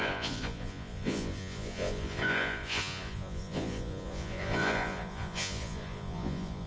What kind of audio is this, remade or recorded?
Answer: remade